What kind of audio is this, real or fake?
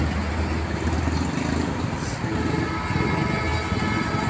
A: real